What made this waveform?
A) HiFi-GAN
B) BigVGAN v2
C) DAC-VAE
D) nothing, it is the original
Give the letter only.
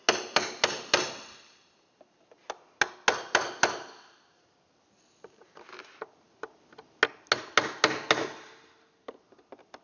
D